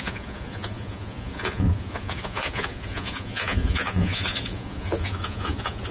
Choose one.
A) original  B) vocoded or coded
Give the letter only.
B